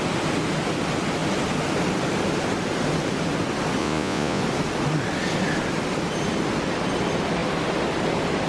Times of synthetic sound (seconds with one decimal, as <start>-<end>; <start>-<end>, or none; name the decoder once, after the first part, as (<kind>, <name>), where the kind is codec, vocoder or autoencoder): 3.8-4.4 (vocoder, Vocos)